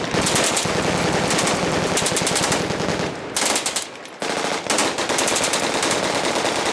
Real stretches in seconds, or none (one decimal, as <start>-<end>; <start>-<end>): 0.0-6.7